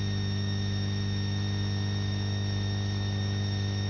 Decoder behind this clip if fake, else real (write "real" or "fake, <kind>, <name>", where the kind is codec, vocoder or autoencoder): fake, autoencoder, DAC-VAE